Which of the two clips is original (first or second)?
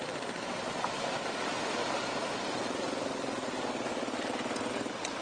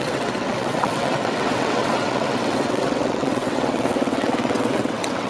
first